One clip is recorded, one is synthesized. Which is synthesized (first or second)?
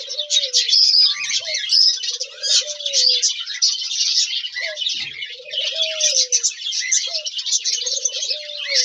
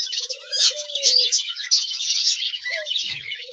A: second